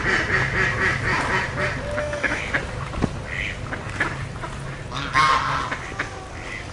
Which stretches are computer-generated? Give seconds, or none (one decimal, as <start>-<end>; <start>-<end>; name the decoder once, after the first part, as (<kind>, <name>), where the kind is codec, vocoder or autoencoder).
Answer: 2.0-2.4 (codec, DAC)